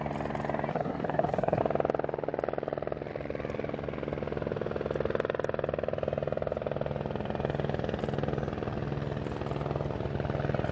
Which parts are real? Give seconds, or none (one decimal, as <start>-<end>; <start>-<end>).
0.0-0.7; 1.6-10.7